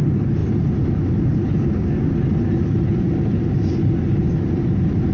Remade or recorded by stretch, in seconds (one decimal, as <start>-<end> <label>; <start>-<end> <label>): 0.0-5.1 recorded